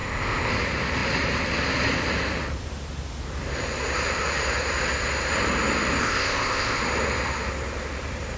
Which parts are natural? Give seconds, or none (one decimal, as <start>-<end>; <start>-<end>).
0.5-6.0; 6.8-8.4